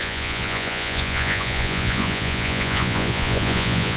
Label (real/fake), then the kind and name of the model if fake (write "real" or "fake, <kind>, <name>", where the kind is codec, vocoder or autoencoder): fake, vocoder, Vocos